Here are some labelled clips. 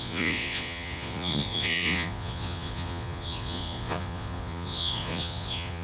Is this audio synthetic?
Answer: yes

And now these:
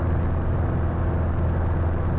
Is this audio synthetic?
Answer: no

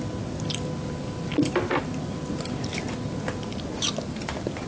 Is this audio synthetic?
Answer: no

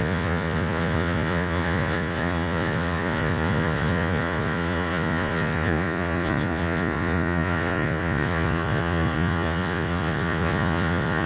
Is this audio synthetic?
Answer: yes